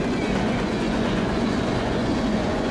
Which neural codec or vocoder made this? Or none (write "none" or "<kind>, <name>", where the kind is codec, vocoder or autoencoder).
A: vocoder, Vocos